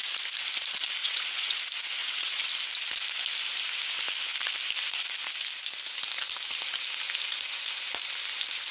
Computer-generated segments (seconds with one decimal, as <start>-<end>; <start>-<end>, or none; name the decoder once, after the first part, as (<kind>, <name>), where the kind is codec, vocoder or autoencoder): 1.0-1.6 (vocoder, WaveNeXt); 2.0-2.5